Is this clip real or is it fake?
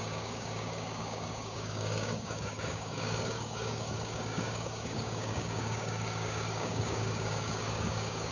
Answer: fake